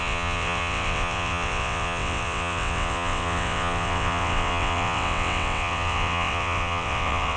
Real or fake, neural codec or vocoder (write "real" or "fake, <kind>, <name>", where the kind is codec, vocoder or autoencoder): fake, vocoder, WaveNeXt